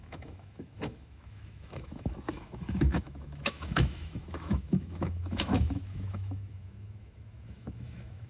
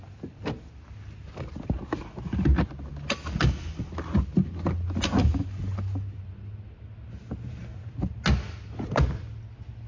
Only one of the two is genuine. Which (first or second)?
second